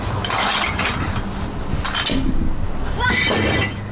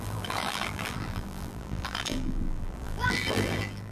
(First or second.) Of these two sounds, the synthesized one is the second